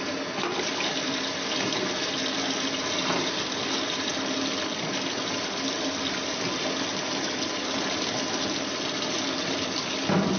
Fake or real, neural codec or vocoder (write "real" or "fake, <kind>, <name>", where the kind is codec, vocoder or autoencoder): real